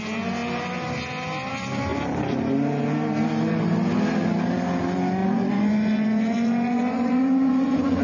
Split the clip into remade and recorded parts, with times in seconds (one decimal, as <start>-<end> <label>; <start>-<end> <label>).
0.0-5.2 recorded; 5.2-8.0 remade